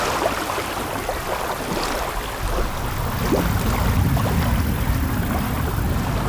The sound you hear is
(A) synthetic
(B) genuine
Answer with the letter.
B